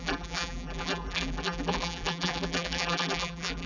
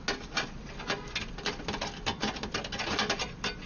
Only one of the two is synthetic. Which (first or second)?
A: first